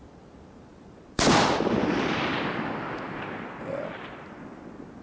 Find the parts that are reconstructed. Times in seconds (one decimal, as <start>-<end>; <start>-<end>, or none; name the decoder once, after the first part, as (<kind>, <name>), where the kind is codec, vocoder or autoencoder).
none